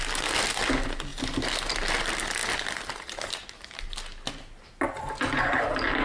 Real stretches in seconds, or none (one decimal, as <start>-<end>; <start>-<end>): 0.0-6.0